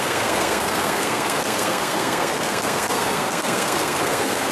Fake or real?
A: fake